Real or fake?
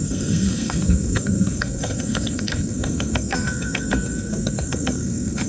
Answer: fake